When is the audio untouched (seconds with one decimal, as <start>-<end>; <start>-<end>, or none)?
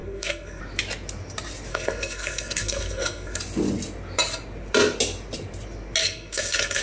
0.6-1.7; 3.4-6.0